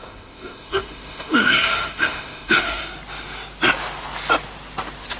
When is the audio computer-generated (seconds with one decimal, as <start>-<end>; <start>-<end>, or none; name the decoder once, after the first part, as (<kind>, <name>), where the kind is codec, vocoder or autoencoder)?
0.0-2.8 (autoencoder, DAC-VAE)